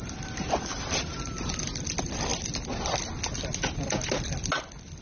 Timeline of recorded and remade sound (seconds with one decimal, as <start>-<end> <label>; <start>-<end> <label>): 0.0-5.0 recorded